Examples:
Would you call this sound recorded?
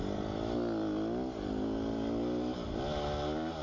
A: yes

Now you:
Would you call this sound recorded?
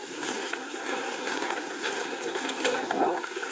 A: no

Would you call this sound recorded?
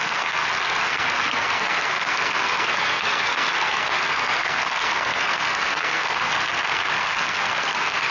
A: no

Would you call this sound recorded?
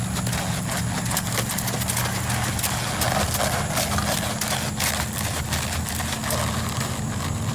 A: yes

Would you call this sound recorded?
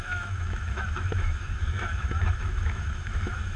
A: no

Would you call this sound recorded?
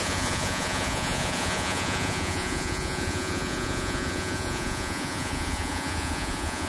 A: no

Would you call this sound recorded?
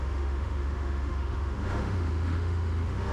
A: no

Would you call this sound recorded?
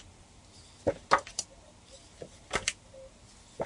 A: yes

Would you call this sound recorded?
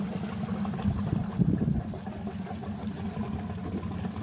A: yes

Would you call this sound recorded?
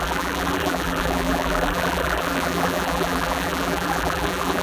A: no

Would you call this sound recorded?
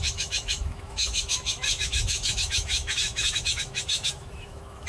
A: no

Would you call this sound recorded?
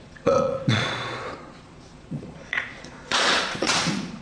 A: no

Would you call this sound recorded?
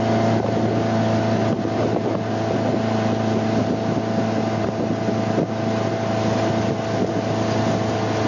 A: yes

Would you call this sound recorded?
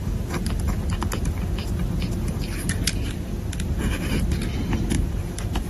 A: yes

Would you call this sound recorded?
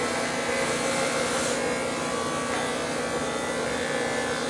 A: yes